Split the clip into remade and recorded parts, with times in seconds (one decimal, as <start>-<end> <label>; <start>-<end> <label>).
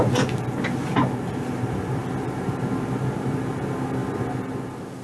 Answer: 0.0-5.0 recorded